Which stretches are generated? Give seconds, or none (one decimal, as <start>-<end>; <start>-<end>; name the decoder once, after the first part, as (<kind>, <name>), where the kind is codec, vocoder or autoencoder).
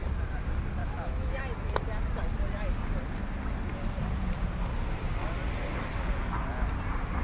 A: 0.8-1.4 (autoencoder, DAC-VAE)